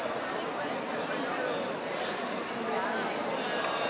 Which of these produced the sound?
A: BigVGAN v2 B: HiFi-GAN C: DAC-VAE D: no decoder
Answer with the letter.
D